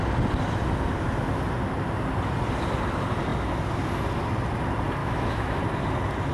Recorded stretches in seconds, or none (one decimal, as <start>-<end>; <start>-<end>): 0.0-5.0; 5.6-6.3